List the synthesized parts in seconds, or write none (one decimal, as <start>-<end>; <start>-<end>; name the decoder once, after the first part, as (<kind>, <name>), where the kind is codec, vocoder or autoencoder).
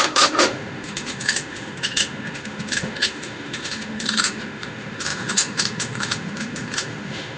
0.0-7.4 (autoencoder, DAC-VAE)